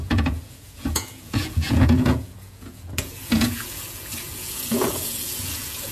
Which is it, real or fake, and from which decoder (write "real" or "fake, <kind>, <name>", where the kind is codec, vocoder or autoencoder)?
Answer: fake, vocoder, Vocos